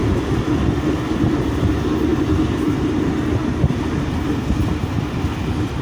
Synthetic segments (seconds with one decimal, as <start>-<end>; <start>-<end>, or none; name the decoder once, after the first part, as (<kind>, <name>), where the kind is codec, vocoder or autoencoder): none